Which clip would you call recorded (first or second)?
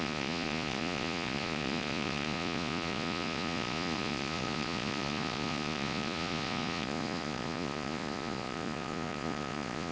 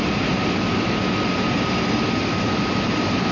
second